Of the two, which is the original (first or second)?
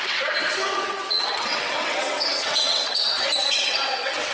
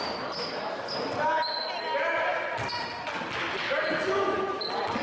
second